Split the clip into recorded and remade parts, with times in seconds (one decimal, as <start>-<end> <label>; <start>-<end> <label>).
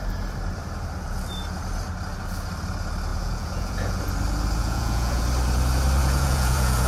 0.0-3.1 recorded; 3.1-4.0 remade; 4.0-4.6 recorded; 4.6-5.2 remade; 5.2-6.0 recorded; 6.0-6.9 remade